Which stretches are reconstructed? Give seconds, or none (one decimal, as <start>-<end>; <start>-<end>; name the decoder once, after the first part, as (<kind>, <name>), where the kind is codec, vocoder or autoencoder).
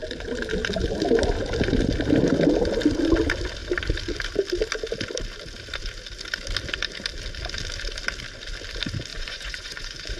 9.1-10.2 (vocoder, Vocos)